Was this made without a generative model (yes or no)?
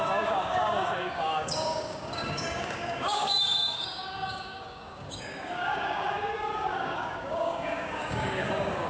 no